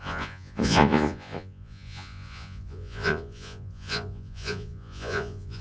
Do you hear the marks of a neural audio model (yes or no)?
yes